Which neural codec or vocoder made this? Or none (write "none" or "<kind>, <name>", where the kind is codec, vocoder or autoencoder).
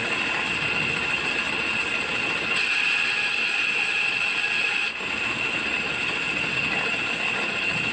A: none